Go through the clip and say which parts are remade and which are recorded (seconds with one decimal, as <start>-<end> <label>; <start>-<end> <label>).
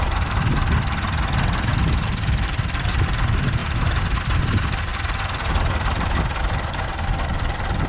0.0-3.6 remade; 3.6-4.4 recorded; 4.4-4.9 remade; 4.9-6.4 recorded; 6.4-7.9 remade